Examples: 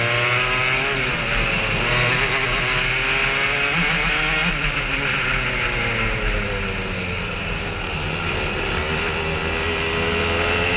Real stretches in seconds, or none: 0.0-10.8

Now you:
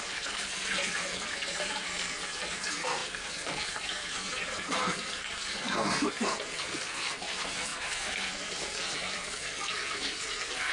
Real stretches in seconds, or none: none

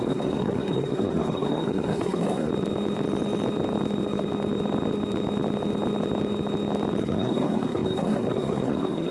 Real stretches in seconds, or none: 2.5-7.0

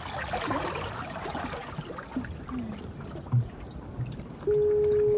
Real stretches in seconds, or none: 0.0-5.2